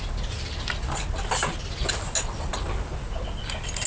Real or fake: real